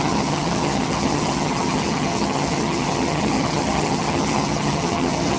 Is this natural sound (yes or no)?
no